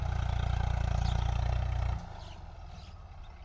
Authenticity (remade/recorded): recorded